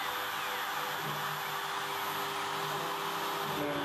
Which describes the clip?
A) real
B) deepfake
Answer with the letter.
A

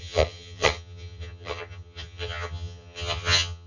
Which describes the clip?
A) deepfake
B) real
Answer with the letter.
A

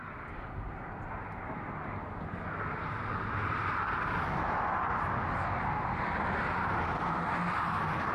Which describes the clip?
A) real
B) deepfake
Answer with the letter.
A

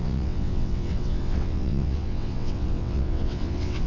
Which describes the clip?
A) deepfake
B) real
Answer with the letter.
A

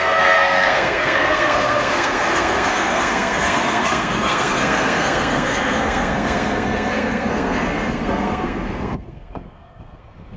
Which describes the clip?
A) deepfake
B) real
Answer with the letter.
A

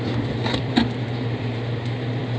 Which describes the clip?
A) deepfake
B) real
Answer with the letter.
A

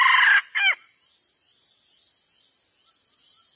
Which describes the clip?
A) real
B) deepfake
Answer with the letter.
A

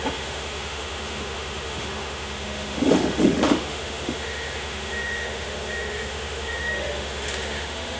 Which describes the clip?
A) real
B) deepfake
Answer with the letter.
B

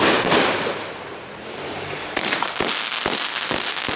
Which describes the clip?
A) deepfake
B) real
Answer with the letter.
B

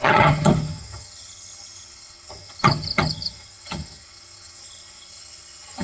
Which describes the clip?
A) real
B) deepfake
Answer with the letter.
B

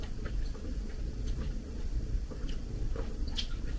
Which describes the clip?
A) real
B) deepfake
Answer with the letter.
B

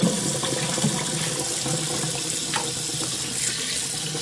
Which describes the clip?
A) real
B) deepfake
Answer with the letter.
A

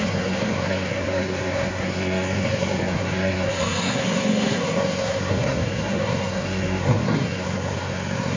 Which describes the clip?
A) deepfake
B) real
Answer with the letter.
A